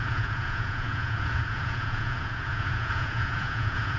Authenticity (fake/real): fake